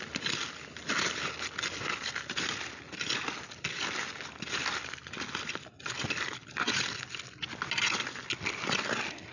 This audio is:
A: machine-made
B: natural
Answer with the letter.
B